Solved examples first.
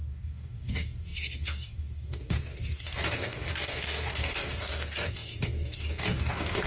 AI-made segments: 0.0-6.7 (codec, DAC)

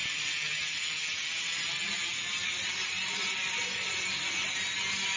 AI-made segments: none

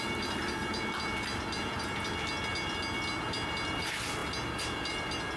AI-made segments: none

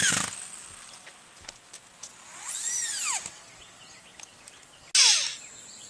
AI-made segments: none

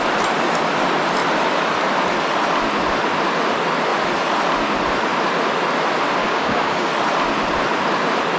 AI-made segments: 6.2-6.9 (codec, DAC)

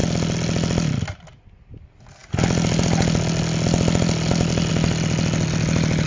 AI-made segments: none

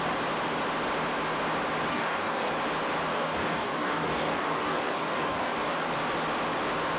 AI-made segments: 1.9-2.5 (codec, DAC); 3.1-5.9